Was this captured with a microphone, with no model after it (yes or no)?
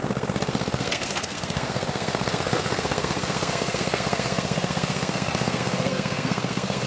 no